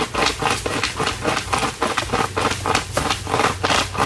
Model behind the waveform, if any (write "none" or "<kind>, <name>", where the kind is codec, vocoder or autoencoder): none